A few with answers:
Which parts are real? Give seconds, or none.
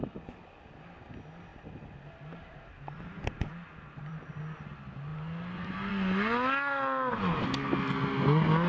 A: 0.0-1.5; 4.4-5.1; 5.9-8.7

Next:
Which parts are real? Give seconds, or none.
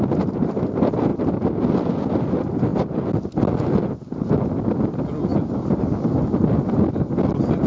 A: 0.0-7.7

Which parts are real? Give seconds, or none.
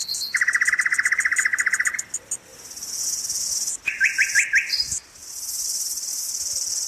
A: 0.0-6.9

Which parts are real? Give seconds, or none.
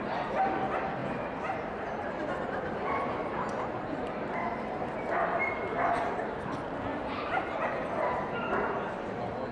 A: 0.0-1.0; 4.4-6.9; 8.3-9.5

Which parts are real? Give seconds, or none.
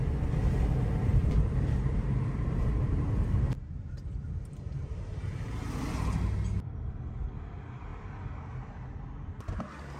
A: 0.0-1.2; 5.6-10.0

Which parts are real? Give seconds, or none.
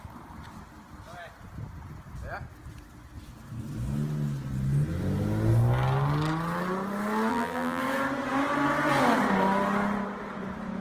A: 0.0-7.3; 7.8-10.8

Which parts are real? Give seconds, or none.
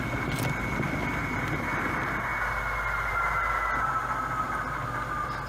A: 0.0-5.5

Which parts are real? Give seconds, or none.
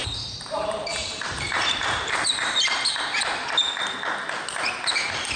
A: 2.9-5.4